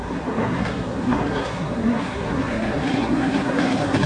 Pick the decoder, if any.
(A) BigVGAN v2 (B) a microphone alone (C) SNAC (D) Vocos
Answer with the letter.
C